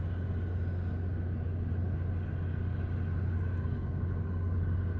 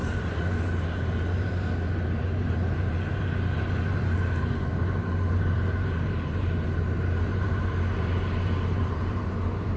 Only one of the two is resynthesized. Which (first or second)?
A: second